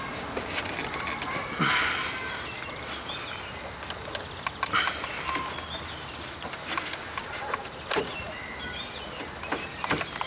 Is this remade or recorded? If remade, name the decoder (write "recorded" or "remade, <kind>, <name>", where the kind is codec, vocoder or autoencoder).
recorded